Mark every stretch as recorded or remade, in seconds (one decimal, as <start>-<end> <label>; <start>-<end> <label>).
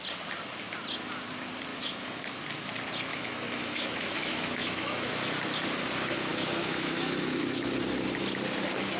0.0-1.7 recorded; 1.7-2.4 remade; 2.4-3.1 recorded; 3.1-5.1 remade; 5.1-6.3 recorded; 6.3-7.8 remade; 7.8-9.0 recorded